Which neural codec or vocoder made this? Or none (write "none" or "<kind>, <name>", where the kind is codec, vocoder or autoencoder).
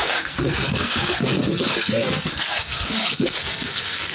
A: codec, SNAC